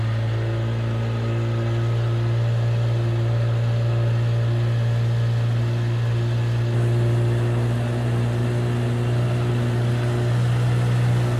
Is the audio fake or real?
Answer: real